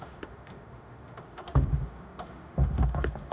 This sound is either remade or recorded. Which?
remade